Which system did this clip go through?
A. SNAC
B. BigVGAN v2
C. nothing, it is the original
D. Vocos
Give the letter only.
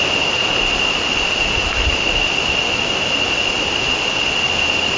C